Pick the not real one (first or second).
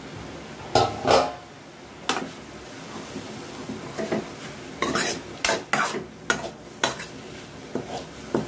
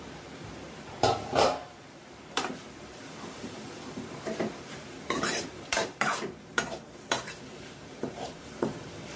second